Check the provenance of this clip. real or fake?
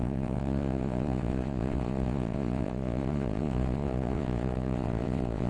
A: fake